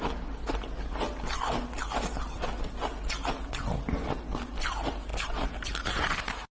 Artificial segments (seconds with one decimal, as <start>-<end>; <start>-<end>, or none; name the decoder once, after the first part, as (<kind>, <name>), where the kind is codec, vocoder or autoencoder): none